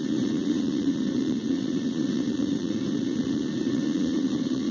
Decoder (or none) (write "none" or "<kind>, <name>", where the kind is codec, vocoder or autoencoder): vocoder, Vocos